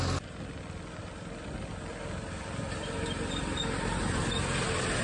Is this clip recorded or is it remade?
recorded